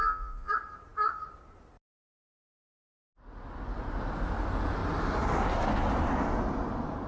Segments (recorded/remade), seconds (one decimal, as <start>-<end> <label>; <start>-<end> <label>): 0.0-0.5 remade; 0.5-7.1 recorded